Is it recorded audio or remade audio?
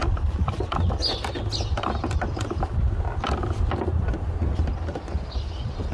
recorded